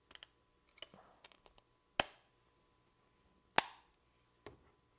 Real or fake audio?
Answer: real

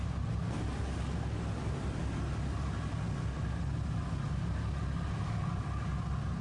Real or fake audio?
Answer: real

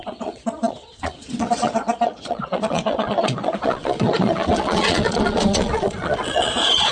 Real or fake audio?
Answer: fake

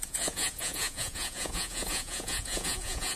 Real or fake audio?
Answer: fake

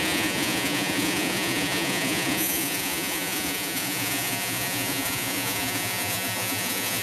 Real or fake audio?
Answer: fake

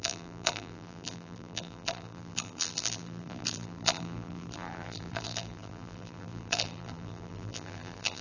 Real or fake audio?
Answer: fake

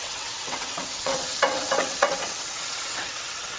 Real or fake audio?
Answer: fake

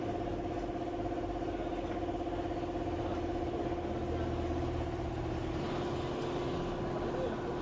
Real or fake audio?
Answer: real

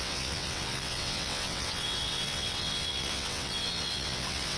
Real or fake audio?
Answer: fake